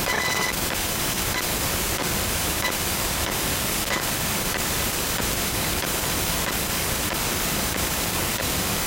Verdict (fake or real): fake